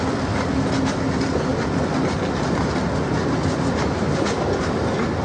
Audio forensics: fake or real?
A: real